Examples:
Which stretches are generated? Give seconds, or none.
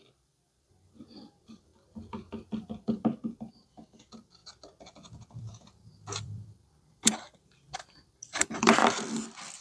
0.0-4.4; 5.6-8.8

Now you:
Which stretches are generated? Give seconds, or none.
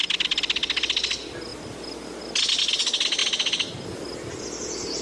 none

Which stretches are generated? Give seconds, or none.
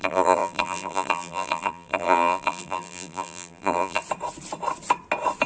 0.0-4.0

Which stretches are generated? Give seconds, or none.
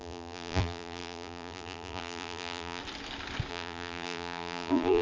0.0-2.8; 3.5-5.0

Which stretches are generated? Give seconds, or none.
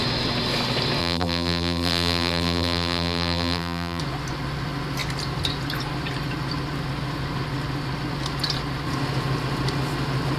1.0-4.0